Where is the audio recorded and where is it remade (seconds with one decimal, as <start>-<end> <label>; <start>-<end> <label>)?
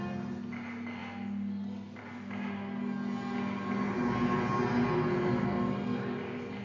0.0-6.6 recorded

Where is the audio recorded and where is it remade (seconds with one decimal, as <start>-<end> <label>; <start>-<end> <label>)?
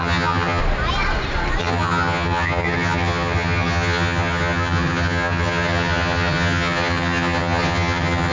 0.0-0.6 remade; 0.6-1.6 recorded; 1.6-8.3 remade